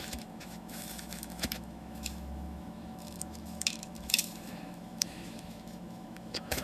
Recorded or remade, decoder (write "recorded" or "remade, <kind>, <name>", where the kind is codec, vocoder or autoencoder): remade, autoencoder, DAC-VAE